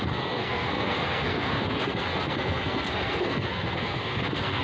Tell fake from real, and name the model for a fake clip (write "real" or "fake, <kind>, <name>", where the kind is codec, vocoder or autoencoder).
fake, codec, SNAC